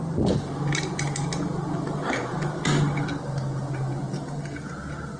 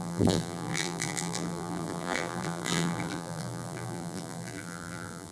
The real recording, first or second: first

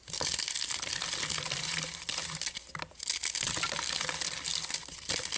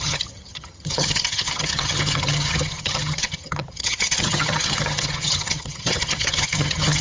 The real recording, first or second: first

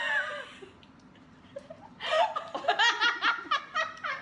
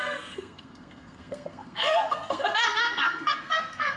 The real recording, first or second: first